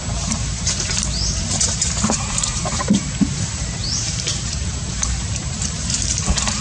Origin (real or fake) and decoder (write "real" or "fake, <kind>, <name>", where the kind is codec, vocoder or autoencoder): fake, vocoder, BigVGAN v2